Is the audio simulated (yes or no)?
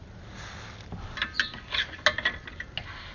no